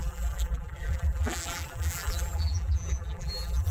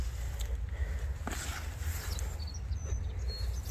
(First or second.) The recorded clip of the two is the second